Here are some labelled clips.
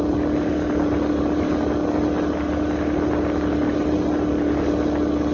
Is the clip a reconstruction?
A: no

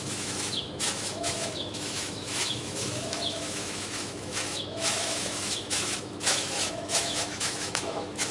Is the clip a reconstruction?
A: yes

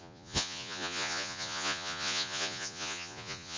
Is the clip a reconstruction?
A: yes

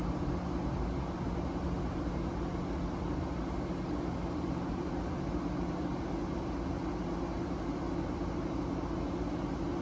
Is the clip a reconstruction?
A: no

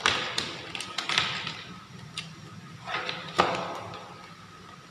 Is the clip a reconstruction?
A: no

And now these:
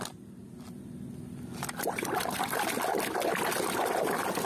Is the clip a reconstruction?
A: no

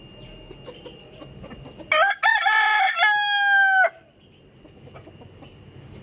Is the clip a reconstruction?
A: no